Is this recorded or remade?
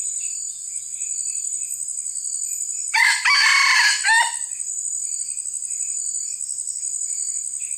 recorded